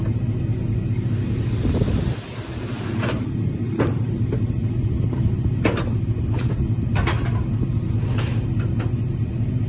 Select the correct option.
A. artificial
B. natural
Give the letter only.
B